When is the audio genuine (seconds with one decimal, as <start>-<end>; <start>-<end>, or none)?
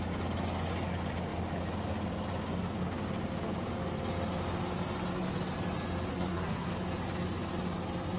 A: 0.0-6.1; 6.7-8.2